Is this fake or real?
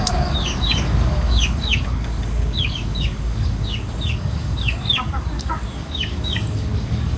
fake